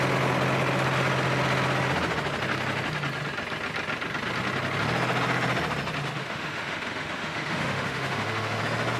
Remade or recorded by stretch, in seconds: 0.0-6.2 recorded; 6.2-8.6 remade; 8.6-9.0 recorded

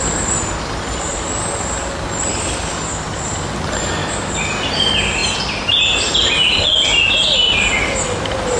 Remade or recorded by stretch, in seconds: 0.0-8.6 recorded

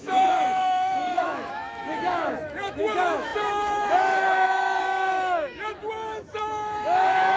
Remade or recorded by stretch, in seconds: 0.0-5.8 remade; 5.8-6.4 recorded; 6.4-7.4 remade

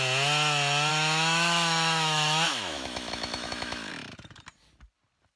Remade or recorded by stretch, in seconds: 0.0-0.9 recorded; 0.9-3.9 remade; 3.9-5.4 recorded

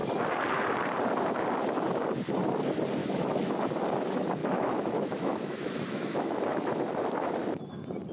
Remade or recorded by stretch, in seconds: 0.0-3.0 recorded; 3.0-3.5 remade; 3.5-4.4 recorded; 4.4-7.3 remade; 7.3-8.1 recorded